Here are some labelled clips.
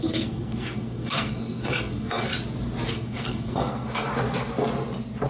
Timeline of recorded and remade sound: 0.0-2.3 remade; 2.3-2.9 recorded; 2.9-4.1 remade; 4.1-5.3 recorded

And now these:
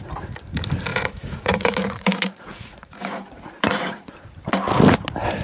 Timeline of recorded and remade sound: 0.0-0.9 recorded; 0.9-4.1 remade; 4.1-5.4 recorded

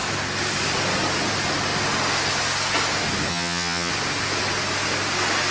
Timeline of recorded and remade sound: 0.0-3.3 recorded; 3.3-3.9 remade; 3.9-5.5 recorded

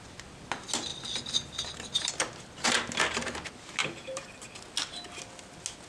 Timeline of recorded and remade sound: 0.0-0.9 recorded; 0.9-2.1 remade; 2.1-3.8 recorded; 3.8-4.6 remade; 4.6-5.9 recorded